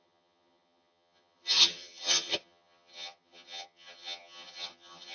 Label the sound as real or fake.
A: fake